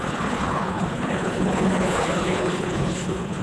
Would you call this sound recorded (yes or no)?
no